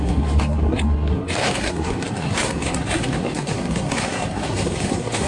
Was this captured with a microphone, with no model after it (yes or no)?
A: no